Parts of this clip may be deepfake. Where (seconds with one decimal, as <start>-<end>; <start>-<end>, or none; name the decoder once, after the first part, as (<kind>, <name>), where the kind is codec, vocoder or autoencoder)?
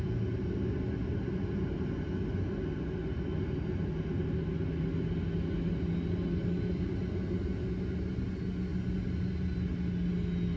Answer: none